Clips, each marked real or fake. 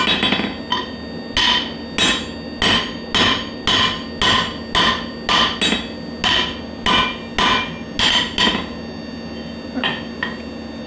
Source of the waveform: real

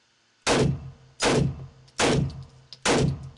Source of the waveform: real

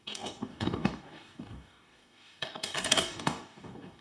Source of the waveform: fake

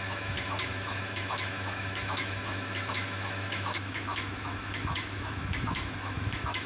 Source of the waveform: fake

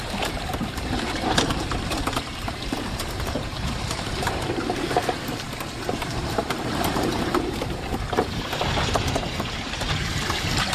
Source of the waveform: fake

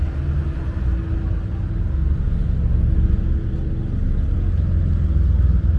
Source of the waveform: real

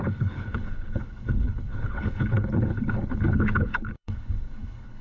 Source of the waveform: fake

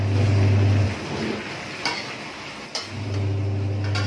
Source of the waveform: real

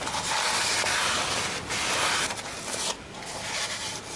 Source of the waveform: real